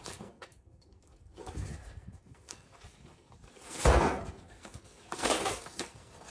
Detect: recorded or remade remade